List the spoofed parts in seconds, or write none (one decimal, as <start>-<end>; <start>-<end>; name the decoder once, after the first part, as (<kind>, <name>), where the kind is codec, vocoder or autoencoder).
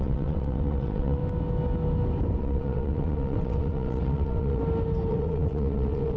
0.0-1.2 (vocoder, WaveNeXt); 2.4-4.6; 5.1-6.2